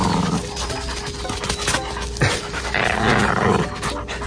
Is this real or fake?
real